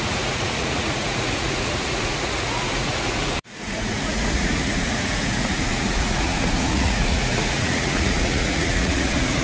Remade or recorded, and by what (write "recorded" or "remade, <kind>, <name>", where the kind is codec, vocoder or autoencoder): remade, vocoder, Vocos